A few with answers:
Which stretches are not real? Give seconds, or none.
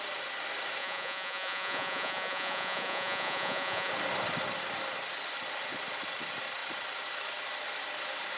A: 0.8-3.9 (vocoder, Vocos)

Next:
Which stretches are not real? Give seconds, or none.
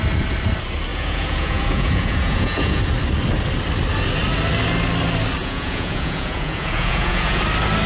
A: 0.9-2.8 (vocoder, Vocos); 5.4-7.4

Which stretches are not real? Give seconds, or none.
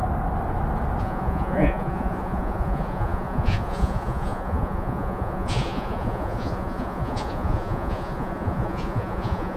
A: 1.0-9.6 (vocoder, Vocos)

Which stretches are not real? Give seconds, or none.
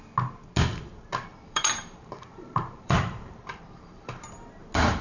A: 1.3-4.3 (vocoder, BigVGAN v2)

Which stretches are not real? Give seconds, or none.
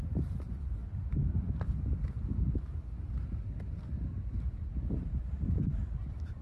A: 0.0-0.8 (vocoder, BigVGAN v2); 4.3-6.4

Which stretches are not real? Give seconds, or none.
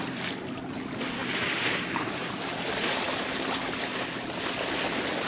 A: 1.2-4.4 (vocoder, BigVGAN v2)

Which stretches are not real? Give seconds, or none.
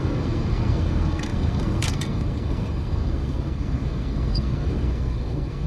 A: 0.0-5.7 (codec, SNAC)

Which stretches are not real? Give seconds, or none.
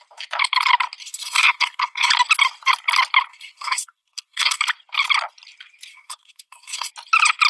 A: 1.0-2.1 (codec, SNAC); 3.3-4.6; 5.9-6.9